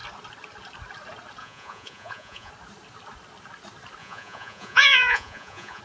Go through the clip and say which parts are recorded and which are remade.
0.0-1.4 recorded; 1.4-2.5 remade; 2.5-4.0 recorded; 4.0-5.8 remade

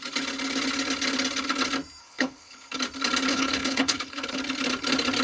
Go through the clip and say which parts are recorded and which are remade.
0.0-2.0 recorded; 2.0-2.8 remade; 2.8-3.3 recorded; 3.3-4.4 remade; 4.4-5.2 recorded

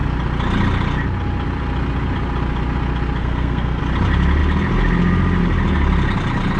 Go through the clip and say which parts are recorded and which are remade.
0.0-3.2 recorded; 3.2-3.8 remade; 3.8-6.6 recorded

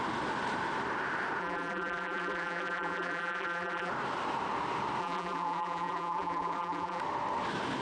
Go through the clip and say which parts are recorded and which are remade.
0.0-1.4 recorded; 1.4-3.9 remade; 3.9-5.0 recorded; 5.0-7.0 remade; 7.0-7.8 recorded